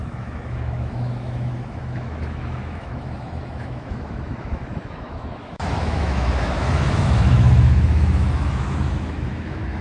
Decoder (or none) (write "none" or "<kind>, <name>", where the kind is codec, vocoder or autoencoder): autoencoder, DAC-VAE